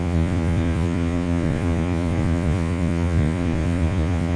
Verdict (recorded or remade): remade